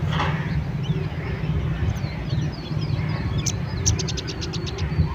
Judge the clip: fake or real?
real